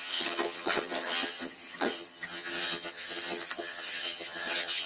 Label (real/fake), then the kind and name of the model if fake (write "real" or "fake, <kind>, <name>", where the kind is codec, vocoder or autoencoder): fake, vocoder, HiFi-GAN